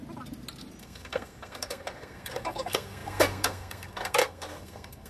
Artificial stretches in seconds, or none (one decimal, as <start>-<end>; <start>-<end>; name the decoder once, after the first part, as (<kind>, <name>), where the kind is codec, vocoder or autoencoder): 0.8-5.1 (codec, SNAC)